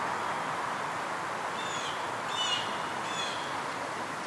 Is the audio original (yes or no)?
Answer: yes